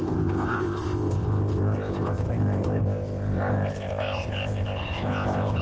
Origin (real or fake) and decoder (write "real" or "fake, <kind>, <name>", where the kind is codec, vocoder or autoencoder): fake, codec, ZipCodec